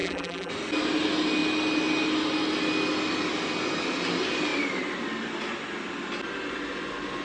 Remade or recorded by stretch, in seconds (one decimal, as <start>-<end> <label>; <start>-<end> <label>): 0.0-0.5 remade; 0.5-7.2 recorded

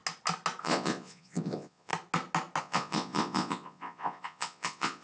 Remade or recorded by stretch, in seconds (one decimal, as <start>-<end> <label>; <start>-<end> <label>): 0.0-0.6 recorded; 0.6-1.9 remade; 1.9-2.6 recorded; 2.6-5.0 remade

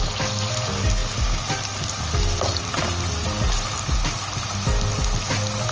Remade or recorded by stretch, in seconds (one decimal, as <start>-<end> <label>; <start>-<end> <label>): 0.0-5.7 recorded

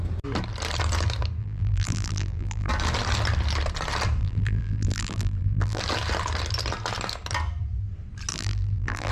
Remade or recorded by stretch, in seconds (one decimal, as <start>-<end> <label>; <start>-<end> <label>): 0.0-1.4 recorded; 1.4-2.7 remade; 2.7-4.2 recorded; 4.2-5.8 remade; 5.8-8.3 recorded; 8.3-9.1 remade

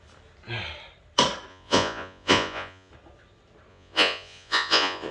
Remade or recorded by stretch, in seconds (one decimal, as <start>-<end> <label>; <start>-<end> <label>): 0.0-1.5 recorded; 1.5-2.9 remade; 2.9-3.7 recorded; 3.7-5.1 remade